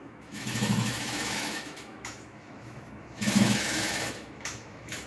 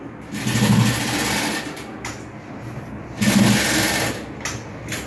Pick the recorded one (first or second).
second